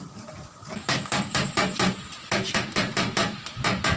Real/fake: real